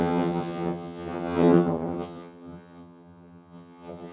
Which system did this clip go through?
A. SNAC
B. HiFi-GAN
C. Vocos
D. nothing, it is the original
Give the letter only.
B